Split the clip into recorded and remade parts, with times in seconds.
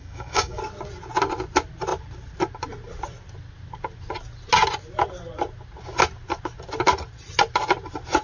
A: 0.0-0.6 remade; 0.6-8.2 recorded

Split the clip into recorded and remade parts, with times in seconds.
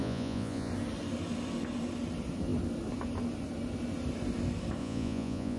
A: 0.0-0.7 remade; 0.7-4.8 recorded; 4.8-5.6 remade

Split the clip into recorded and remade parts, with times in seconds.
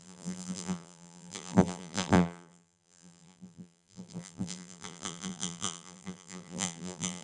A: 0.0-7.2 remade